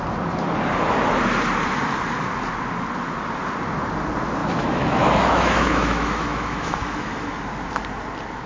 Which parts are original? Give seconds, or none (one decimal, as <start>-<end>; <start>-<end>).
0.0-4.4; 7.4-8.5